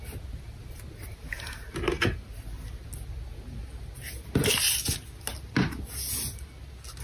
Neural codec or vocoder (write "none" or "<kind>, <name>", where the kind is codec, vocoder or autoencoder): none